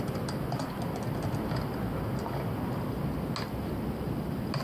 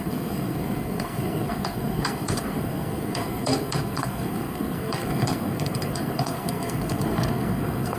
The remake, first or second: second